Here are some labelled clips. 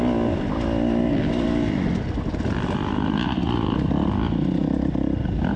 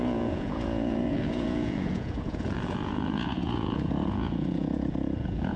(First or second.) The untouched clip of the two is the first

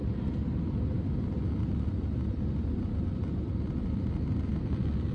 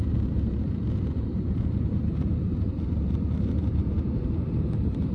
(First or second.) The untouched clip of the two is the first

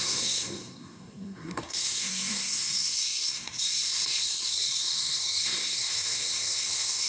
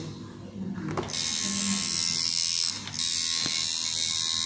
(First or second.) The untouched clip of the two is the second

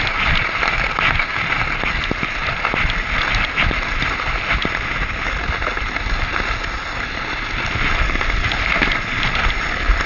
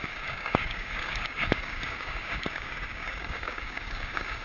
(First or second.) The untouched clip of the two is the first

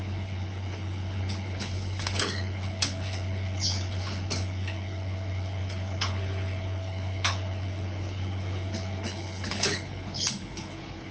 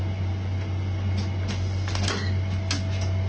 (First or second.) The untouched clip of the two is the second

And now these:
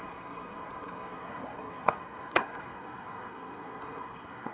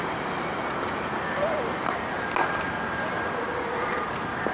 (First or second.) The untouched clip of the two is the second